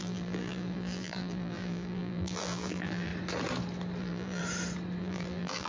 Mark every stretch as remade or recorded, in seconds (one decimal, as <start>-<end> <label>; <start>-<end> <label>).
0.0-3.1 remade; 3.1-4.0 recorded; 4.0-4.4 remade; 4.4-5.0 recorded; 5.0-5.7 remade